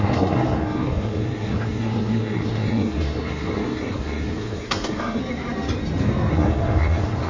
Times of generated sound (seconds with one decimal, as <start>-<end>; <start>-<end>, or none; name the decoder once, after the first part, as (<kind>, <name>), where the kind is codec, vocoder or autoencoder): 0.0-5.2 (codec, SNAC); 6.3-7.3